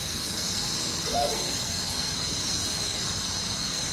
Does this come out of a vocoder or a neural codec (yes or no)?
yes